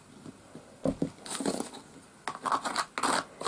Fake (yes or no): no